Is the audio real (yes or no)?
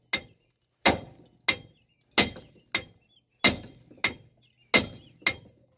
yes